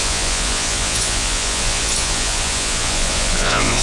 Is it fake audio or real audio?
fake